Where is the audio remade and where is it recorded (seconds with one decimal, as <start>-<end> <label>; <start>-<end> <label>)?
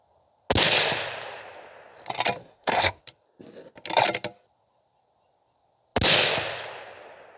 0.0-2.4 recorded; 2.4-3.0 remade; 3.0-7.4 recorded